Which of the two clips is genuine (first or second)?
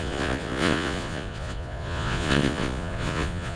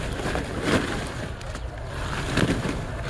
second